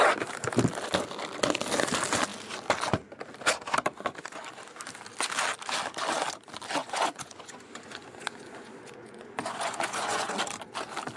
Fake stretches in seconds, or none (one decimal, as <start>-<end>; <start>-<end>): 6.8-10.4